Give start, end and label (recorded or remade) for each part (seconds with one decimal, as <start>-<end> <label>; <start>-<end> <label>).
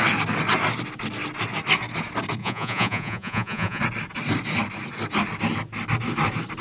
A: 0.0-2.4 recorded; 2.4-3.8 remade; 3.8-6.6 recorded